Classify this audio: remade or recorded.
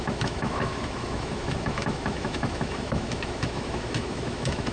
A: remade